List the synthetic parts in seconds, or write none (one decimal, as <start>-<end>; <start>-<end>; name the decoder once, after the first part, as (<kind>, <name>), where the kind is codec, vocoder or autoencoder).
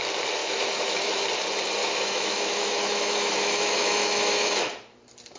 0.4-1.3 (autoencoder, DAC-VAE); 1.8-4.5